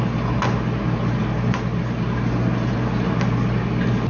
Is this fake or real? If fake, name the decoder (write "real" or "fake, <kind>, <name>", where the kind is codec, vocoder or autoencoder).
real